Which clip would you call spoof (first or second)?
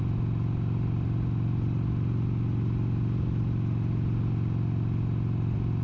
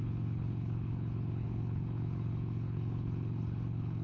second